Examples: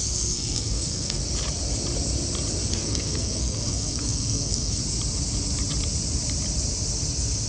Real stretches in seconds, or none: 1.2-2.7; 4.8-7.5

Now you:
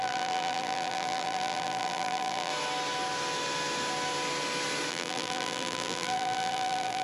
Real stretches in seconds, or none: 2.5-4.9

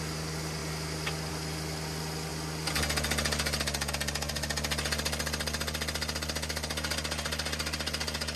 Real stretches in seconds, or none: 0.0-8.4

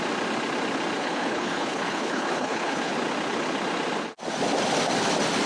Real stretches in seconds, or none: 0.0-1.0; 2.9-5.5

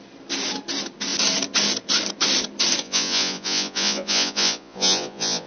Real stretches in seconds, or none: 0.0-2.8